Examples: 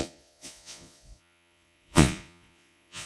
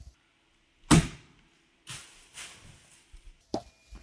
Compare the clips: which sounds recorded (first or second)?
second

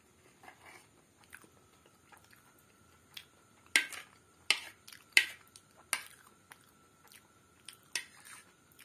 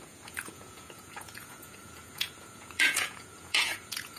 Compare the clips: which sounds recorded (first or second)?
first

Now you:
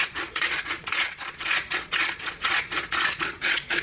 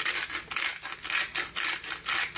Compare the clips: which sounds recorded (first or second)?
second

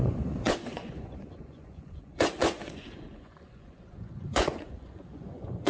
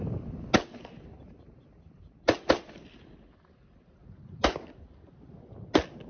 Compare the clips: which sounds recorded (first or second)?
second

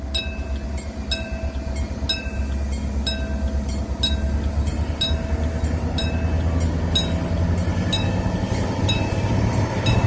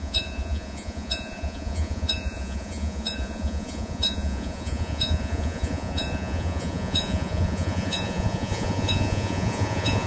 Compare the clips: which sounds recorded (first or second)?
first